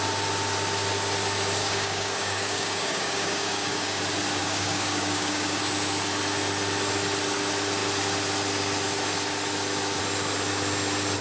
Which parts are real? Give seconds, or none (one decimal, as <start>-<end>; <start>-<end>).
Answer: 0.0-1.6; 4.0-4.4; 5.6-11.2